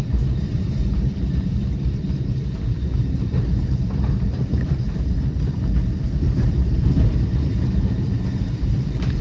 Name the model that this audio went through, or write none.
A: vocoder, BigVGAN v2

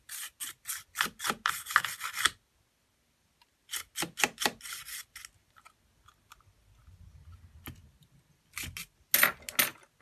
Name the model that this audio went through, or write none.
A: none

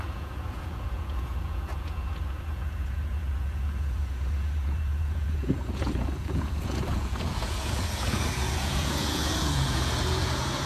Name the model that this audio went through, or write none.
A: vocoder, Vocos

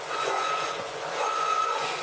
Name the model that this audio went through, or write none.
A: vocoder, Vocos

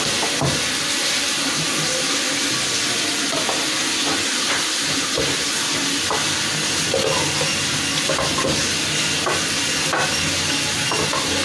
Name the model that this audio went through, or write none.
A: none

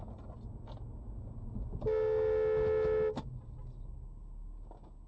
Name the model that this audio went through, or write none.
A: none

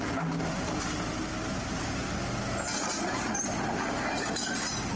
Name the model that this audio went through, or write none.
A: none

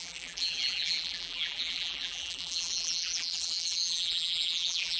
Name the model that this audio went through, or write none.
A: vocoder, BigVGAN v2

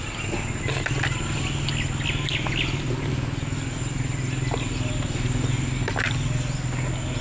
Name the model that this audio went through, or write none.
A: none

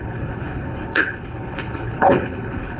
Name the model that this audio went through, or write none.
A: codec, HILCodec